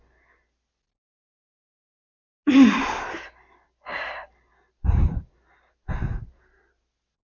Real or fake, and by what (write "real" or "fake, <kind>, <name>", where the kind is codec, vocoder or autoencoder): real